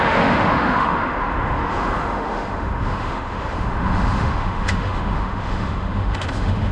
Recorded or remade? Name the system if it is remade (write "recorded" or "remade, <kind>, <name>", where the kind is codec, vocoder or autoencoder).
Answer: remade, autoencoder, DAC-VAE